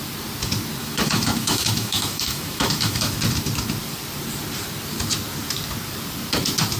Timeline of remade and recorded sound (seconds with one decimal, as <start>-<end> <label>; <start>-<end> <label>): 0.0-0.8 recorded; 0.8-3.2 remade; 3.2-6.8 recorded